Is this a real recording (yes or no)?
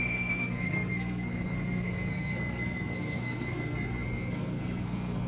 no